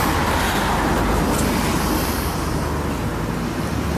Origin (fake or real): real